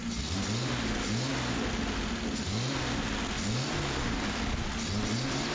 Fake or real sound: real